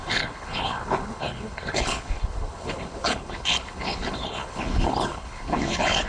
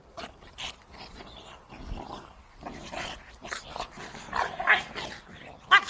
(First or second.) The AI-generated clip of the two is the first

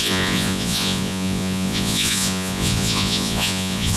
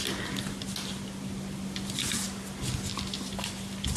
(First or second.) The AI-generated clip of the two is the first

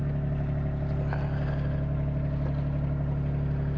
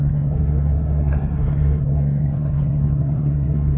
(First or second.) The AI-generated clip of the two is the second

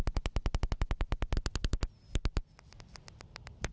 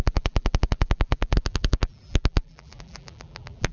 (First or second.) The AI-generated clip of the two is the second